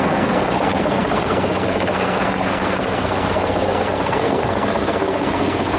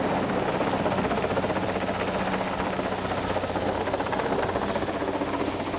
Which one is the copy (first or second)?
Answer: first